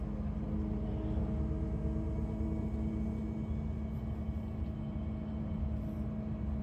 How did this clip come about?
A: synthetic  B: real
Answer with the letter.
B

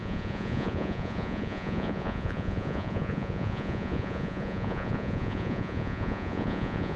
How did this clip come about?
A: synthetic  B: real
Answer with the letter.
A